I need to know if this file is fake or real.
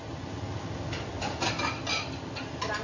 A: real